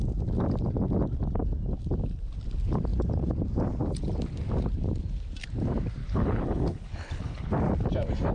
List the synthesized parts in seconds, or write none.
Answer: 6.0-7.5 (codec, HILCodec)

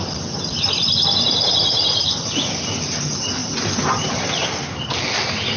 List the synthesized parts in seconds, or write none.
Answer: none

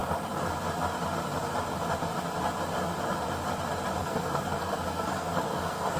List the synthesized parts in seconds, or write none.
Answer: 4.0-6.0 (codec, SNAC)

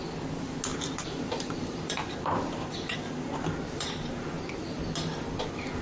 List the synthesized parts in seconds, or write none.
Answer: 0.7-4.2 (vocoder, BigVGAN v2)

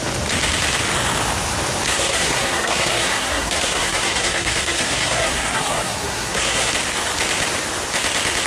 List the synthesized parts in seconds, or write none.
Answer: 1.9-6.7 (codec, SNAC)

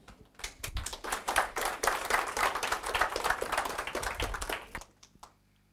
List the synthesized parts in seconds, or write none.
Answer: 0.9-3.7 (vocoder, BigVGAN v2)